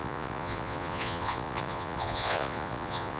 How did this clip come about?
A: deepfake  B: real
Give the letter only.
A